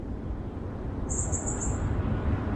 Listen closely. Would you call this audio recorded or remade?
recorded